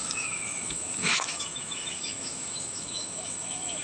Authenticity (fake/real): fake